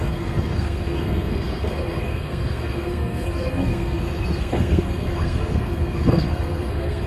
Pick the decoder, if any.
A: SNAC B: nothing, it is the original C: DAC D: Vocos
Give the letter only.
A